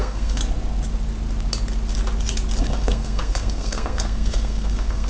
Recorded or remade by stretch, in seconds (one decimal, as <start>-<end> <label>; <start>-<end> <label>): 0.0-0.4 remade; 0.4-2.6 recorded; 2.6-5.1 remade